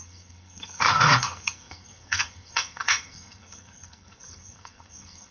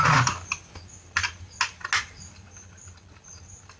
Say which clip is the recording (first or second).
second